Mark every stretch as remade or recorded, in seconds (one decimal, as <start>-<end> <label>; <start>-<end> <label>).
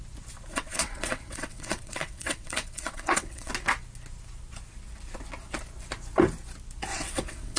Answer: 0.0-0.5 recorded; 0.5-3.5 remade; 3.5-6.9 recorded; 6.9-7.6 remade